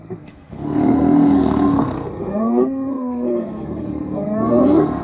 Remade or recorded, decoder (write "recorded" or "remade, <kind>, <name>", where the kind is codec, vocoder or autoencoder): remade, codec, SNAC